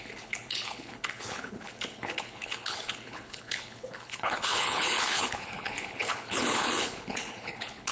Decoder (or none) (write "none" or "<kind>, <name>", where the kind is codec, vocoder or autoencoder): codec, HILCodec